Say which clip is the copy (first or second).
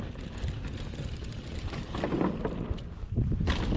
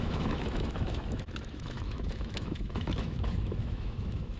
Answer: second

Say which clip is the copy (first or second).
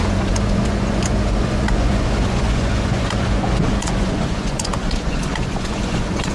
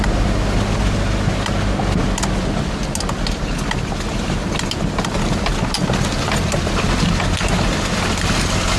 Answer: first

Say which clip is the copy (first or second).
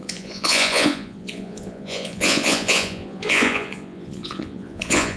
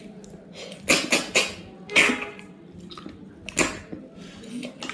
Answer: first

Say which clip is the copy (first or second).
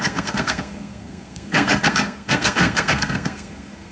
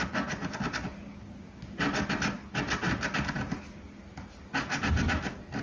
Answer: first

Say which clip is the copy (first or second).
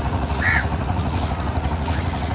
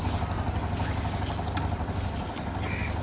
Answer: first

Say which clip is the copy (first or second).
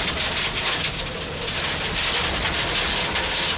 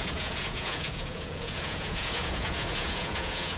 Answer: second